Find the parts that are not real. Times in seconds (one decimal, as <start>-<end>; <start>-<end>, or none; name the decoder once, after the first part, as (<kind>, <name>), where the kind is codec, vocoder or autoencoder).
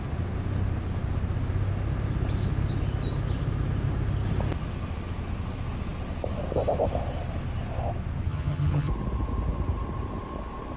8.3-8.9 (vocoder, HiFi-GAN)